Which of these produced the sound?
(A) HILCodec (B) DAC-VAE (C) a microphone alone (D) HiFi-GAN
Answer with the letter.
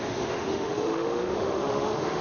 B